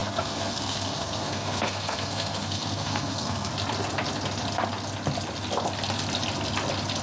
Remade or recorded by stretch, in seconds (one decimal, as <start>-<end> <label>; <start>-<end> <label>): 0.0-3.5 remade; 3.5-7.0 recorded